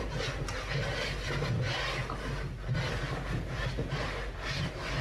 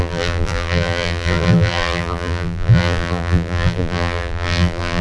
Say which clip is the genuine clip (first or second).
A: first